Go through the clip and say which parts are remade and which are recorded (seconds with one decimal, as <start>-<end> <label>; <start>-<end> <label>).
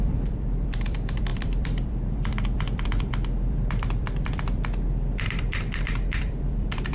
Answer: 0.0-6.9 remade